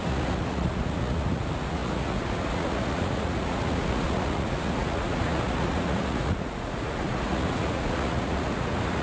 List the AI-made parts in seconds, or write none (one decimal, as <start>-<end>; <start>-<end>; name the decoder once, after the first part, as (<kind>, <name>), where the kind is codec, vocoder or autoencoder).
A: 0.0-9.0 (vocoder, Vocos)